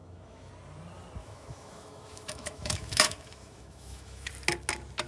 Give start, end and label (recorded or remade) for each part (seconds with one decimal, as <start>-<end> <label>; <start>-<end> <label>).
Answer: 0.0-0.5 remade; 0.5-1.2 recorded; 1.2-4.3 remade; 4.3-5.1 recorded